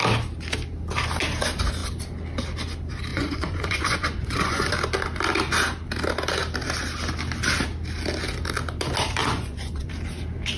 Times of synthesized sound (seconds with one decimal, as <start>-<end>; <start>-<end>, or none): 3.1-4.7; 9.2-9.9